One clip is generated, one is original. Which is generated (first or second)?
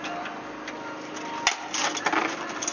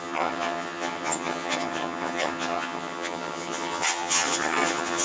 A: second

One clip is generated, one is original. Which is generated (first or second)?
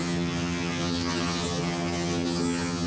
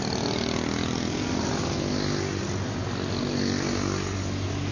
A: first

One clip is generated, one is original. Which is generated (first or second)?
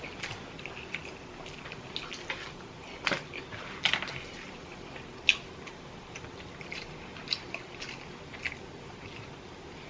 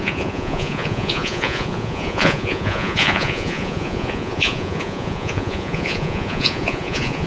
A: second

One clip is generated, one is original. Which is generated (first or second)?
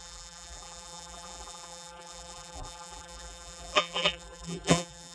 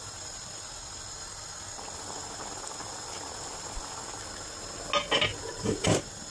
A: first